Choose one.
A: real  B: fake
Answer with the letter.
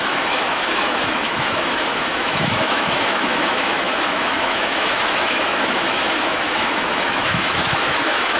B